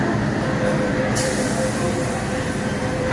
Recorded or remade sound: remade